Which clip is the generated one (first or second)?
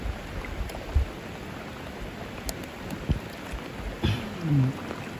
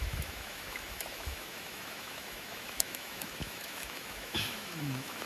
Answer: second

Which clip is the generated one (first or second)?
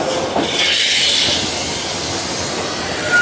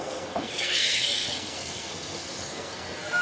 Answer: second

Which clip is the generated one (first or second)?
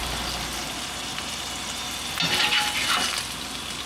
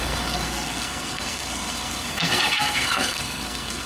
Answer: second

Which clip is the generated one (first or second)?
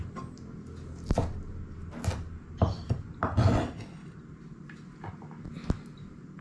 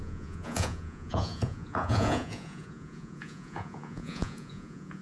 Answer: second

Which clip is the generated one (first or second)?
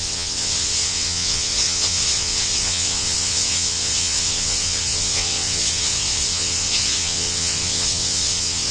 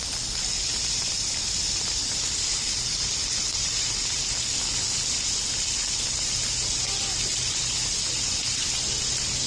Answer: first